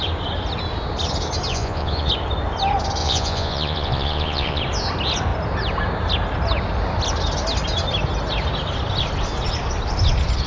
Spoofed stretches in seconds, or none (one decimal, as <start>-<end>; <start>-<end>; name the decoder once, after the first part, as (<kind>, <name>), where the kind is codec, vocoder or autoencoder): 1.5-2.1 (vocoder, Vocos); 3.0-4.6